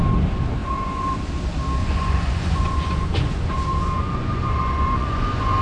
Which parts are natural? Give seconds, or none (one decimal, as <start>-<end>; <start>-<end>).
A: 0.0-0.6; 1.2-1.8